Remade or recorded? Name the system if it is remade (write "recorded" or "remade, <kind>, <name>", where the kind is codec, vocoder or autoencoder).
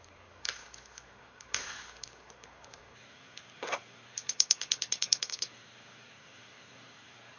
remade, codec, SNAC